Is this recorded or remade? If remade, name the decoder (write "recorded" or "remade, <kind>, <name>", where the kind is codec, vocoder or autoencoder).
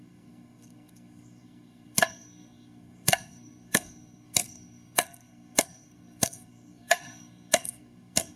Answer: remade, codec, SNAC